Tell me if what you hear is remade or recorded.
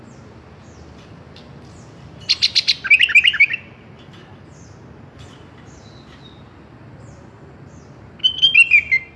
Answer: recorded